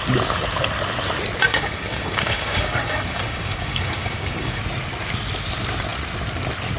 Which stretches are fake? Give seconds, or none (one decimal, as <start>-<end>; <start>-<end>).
1.5-4.6